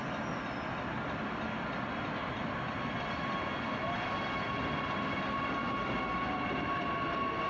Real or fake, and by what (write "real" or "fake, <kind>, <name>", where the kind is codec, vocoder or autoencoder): real